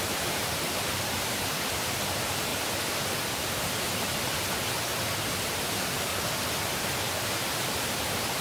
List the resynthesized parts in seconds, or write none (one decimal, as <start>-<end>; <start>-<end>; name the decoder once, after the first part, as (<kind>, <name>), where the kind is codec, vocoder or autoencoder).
0.0-2.5 (vocoder, BigVGAN v2); 3.2-4.9; 5.5-6.1; 6.6-8.4